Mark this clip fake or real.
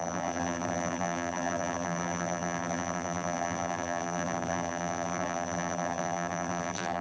fake